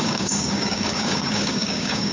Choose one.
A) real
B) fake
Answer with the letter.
B